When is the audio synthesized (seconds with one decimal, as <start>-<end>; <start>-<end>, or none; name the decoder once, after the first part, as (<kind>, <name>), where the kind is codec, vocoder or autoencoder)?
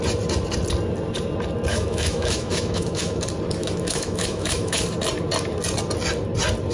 1.7-3.2 (autoencoder, DAC-VAE); 3.6-4.8